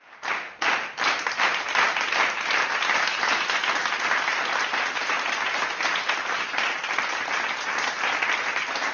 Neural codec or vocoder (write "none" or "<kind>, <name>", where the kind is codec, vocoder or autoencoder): none